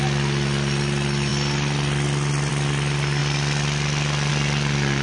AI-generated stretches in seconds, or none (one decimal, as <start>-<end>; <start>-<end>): none